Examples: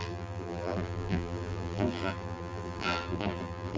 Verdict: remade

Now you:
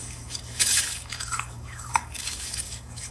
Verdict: remade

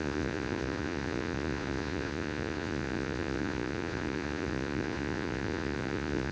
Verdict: remade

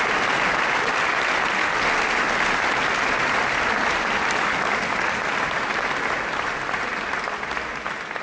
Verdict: recorded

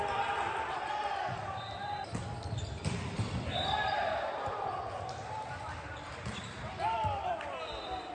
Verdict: remade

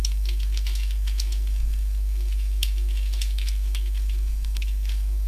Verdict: remade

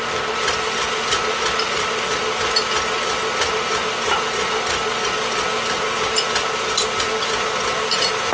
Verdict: recorded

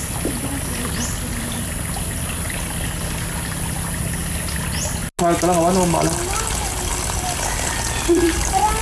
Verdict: recorded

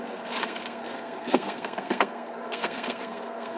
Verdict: remade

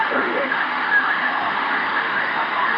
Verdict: remade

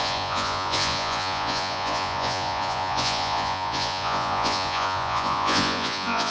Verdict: remade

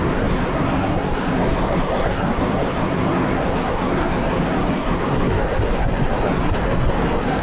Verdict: remade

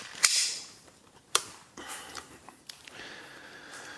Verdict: remade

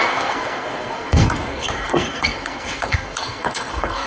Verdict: remade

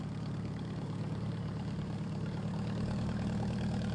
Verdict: remade